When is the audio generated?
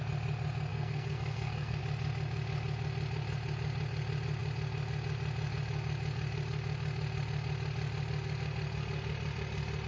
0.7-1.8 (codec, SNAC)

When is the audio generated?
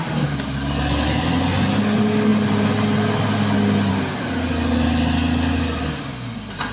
none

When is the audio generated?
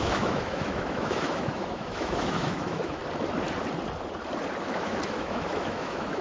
0.0-3.0 (autoencoder, DAC-VAE); 4.6-6.2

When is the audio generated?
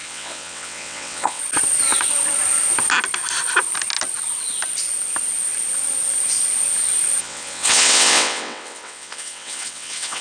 0.0-1.4 (vocoder, WaveNeXt); 7.2-10.2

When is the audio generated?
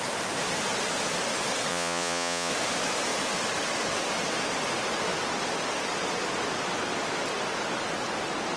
1.7-2.5 (vocoder, Vocos)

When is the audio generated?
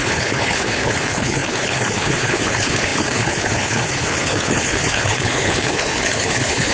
0.0-6.7 (codec, HILCodec)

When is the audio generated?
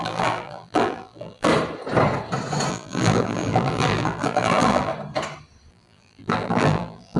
0.0-1.5 (vocoder, BigVGAN v2); 2.7-4.9; 5.7-7.2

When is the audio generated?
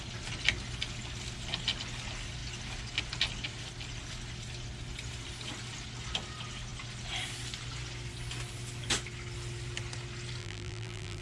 10.4-11.2 (vocoder, BigVGAN v2)